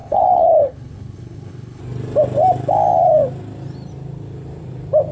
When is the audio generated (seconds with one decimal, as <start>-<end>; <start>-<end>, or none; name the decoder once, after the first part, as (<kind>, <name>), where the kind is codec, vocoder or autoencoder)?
0.0-1.8 (codec, HILCodec)